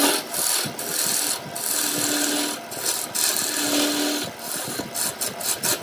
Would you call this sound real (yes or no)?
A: yes